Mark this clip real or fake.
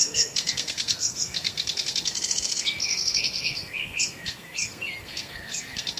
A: fake